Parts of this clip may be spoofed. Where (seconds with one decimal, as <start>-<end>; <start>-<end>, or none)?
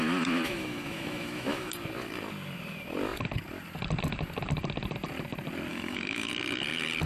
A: 0.0-1.7; 5.7-6.3